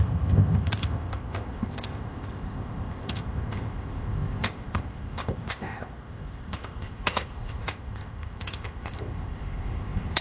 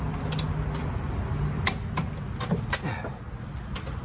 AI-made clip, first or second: first